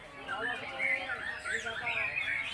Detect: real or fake real